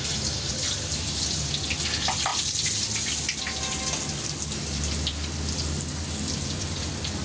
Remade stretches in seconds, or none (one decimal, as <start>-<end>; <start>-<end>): none